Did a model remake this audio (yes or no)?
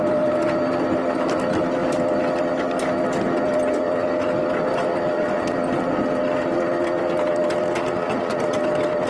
no